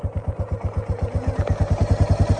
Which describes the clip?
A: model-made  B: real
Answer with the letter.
B